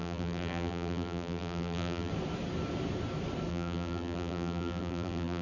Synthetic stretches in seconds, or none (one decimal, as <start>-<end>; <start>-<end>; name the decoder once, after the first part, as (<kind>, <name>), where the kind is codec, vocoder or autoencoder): 0.0-2.1 (vocoder, BigVGAN v2); 3.5-5.4